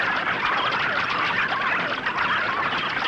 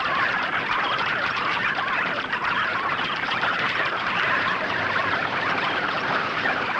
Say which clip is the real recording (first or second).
first